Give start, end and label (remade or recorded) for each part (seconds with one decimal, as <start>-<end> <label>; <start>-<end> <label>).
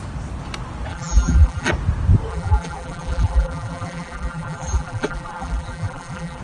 0.0-0.9 recorded; 0.9-1.7 remade; 1.7-2.3 recorded; 2.3-6.4 remade